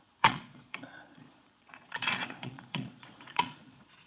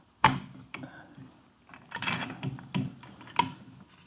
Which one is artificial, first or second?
first